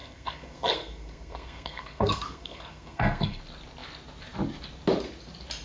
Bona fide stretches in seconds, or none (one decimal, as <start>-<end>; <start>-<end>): 3.4-5.6